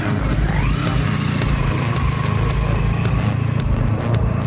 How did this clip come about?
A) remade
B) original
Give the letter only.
B